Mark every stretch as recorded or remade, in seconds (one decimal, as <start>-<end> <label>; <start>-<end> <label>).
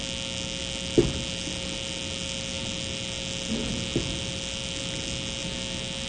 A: 0.0-6.1 recorded